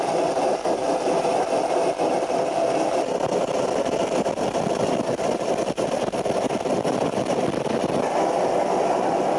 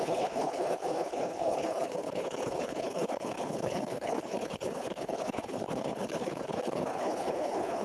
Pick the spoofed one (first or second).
second